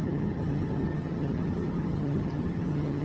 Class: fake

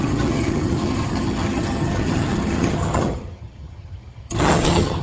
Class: fake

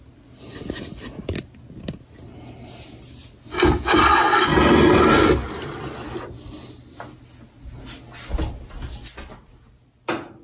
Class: real